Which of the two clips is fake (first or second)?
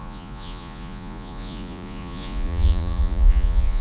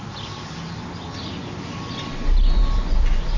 first